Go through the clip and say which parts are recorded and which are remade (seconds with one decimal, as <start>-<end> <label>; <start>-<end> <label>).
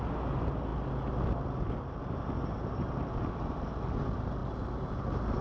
0.0-4.4 recorded; 4.4-5.0 remade; 5.0-5.4 recorded